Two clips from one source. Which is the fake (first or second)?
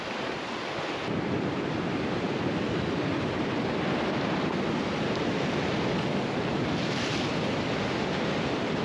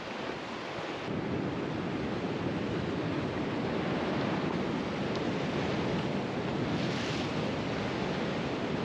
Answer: first